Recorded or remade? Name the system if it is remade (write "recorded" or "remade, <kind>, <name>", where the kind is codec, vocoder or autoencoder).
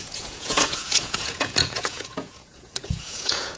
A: remade, vocoder, Vocos